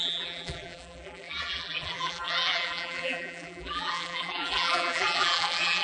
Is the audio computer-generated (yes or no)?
yes